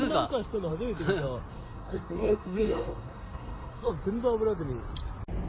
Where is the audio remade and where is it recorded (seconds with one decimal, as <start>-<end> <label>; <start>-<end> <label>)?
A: 0.0-1.5 recorded; 1.5-3.9 remade; 3.9-5.5 recorded